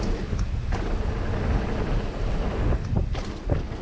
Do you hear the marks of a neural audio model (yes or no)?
no